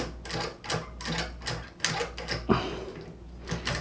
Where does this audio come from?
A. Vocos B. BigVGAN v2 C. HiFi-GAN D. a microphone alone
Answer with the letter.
D